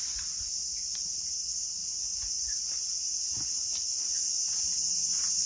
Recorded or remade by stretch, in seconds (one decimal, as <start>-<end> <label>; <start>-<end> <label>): 0.0-5.5 recorded